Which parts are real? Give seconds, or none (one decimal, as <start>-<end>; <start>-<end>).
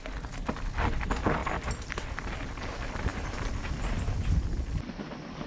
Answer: 0.0-1.4; 1.9-3.1; 3.7-5.5